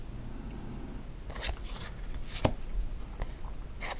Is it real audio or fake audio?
real